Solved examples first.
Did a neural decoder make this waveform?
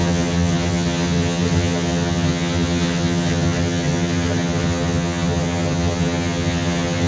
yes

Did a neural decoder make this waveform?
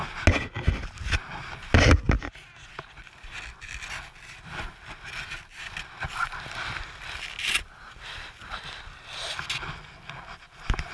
no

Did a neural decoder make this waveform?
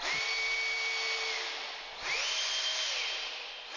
no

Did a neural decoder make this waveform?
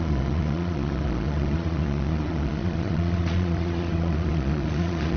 yes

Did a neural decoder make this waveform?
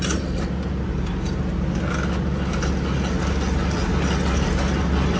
no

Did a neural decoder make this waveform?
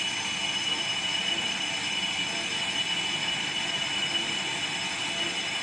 no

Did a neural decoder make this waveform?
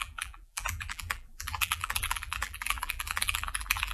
yes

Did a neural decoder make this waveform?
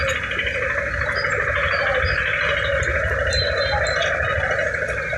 no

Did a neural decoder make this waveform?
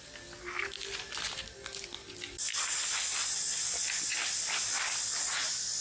no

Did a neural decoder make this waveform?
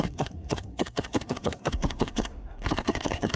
yes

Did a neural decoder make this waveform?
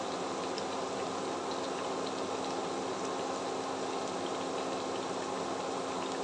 no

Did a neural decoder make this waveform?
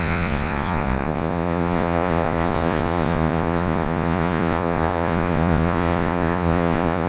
yes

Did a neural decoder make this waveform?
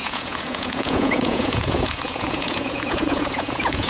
yes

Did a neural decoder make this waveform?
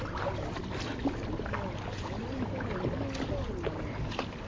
no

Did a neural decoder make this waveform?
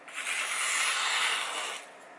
no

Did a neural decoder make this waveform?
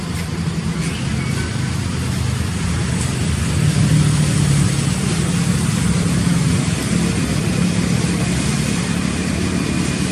no